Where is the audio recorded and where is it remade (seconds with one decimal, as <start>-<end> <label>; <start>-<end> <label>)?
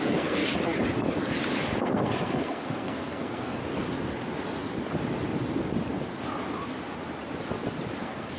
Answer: 0.0-0.4 remade; 0.4-1.8 recorded; 1.8-3.6 remade; 3.6-8.0 recorded; 8.0-8.4 remade